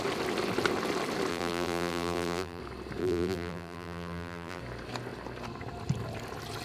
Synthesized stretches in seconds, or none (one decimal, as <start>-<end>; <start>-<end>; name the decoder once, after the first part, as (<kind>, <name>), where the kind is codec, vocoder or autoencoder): 1.3-2.6 (vocoder, BigVGAN v2); 3.0-4.6